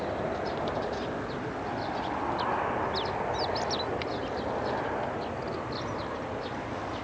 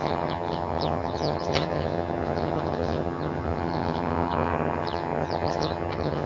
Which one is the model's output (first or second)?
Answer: second